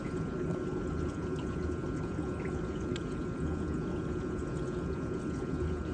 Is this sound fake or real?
real